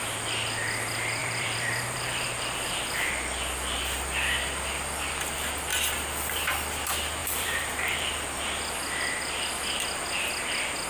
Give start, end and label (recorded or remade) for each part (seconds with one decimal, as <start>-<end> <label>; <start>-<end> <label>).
0.0-1.2 recorded; 1.2-3.1 remade; 3.1-7.2 recorded; 7.2-8.4 remade; 8.4-10.9 recorded